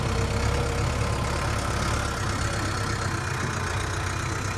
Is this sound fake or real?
real